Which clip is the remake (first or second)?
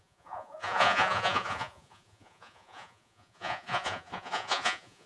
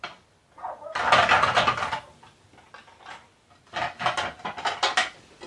first